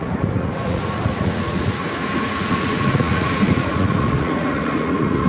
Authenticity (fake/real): fake